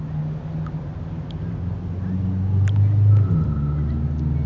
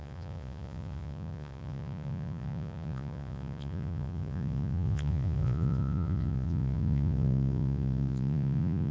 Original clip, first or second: first